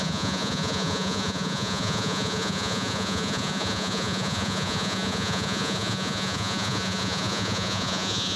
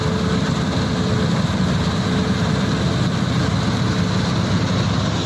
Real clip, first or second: second